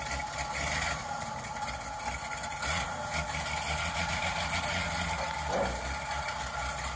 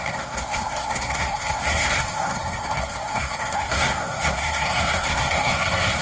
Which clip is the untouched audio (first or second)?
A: first